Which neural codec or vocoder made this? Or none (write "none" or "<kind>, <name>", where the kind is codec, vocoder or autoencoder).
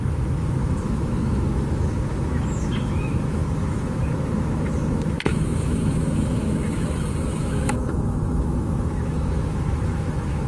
autoencoder, DAC-VAE